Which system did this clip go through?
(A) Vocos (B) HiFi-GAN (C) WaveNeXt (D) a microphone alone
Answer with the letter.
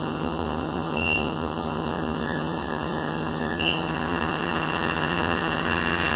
B